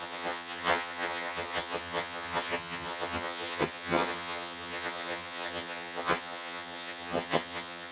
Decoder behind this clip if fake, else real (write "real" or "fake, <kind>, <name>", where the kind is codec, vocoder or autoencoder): fake, vocoder, HiFi-GAN